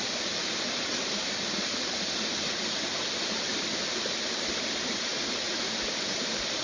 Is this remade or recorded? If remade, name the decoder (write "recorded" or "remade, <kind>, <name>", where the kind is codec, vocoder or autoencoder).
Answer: recorded